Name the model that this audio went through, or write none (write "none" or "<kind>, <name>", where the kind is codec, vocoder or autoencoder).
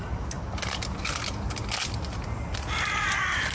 none